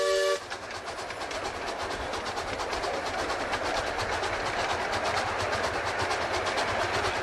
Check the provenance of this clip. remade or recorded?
recorded